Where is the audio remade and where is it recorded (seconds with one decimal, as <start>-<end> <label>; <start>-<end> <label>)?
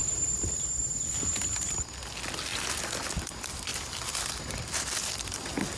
0.0-2.1 remade; 2.1-2.5 recorded; 2.5-3.3 remade; 3.3-3.7 recorded; 3.7-4.6 remade; 4.6-5.8 recorded